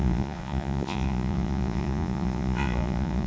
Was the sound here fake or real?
fake